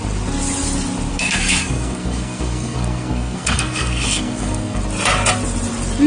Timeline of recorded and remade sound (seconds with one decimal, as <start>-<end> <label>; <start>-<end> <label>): 0.0-1.1 recorded; 1.1-4.8 remade; 4.8-6.1 recorded